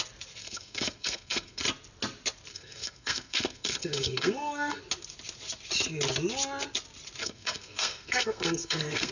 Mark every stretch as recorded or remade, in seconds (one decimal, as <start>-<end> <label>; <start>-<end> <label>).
0.0-0.4 recorded; 0.4-1.6 remade; 1.6-2.5 recorded; 2.5-4.8 remade; 4.8-7.2 recorded; 7.2-9.1 remade